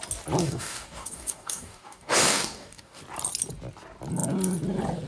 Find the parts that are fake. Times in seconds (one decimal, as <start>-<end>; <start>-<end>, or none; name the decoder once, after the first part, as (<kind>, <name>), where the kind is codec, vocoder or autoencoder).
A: 0.4-3.0 (codec, DAC)